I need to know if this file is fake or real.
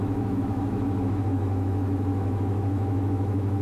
fake